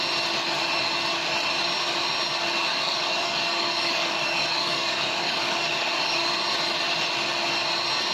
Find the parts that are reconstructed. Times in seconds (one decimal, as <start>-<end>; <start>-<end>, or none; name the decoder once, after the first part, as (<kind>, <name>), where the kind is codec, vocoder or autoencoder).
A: 2.7-6.3 (codec, DAC)